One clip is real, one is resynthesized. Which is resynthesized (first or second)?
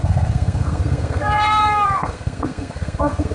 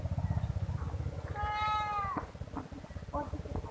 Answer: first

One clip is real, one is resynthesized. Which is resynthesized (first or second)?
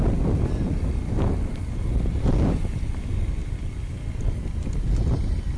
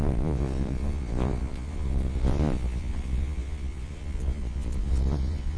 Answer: second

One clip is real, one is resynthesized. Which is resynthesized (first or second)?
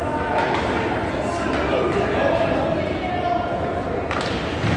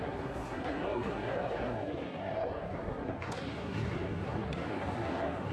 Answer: second